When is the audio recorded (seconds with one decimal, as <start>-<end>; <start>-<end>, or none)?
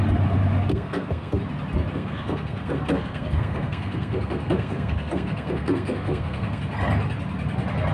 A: 0.0-0.7; 1.4-1.9; 6.6-7.9